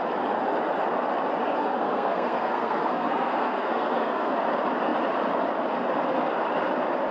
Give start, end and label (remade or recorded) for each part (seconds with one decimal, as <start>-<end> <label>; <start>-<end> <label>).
0.0-1.6 recorded; 1.6-4.3 remade; 4.3-7.1 recorded